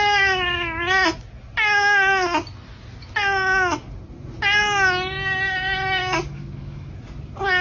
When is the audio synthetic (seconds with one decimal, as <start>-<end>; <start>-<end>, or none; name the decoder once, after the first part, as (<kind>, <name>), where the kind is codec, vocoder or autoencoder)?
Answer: 6.0-6.9 (codec, DAC)